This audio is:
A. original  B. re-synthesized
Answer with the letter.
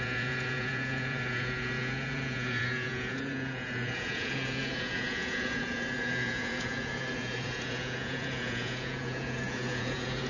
B